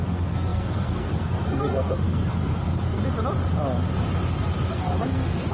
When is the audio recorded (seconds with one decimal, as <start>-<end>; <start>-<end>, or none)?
3.0-4.7